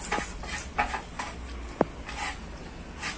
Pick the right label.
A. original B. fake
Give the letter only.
A